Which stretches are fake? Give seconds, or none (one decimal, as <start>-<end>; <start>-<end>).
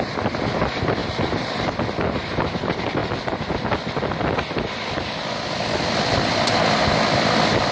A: none